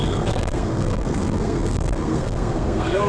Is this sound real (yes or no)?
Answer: no